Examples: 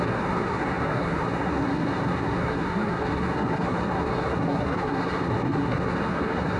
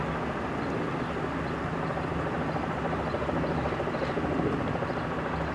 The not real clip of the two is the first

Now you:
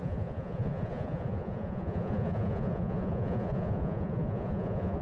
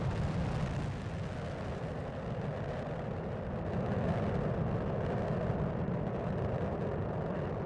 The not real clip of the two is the first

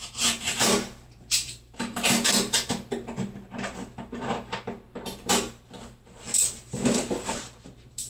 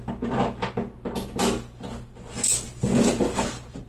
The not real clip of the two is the first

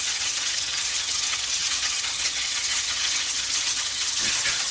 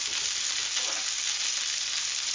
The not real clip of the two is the first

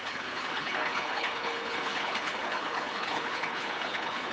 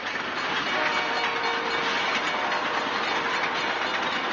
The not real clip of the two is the first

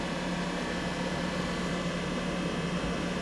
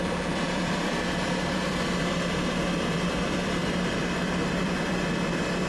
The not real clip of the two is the second